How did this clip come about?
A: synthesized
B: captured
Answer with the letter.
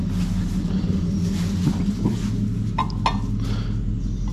B